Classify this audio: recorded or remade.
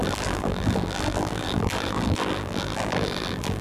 remade